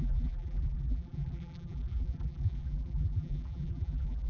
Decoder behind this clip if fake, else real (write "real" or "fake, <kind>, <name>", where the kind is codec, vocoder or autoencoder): fake, vocoder, BigVGAN v2